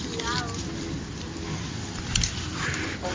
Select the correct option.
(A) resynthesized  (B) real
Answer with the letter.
B